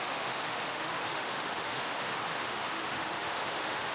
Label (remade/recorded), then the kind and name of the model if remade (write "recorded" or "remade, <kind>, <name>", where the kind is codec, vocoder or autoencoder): remade, autoencoder, DAC-VAE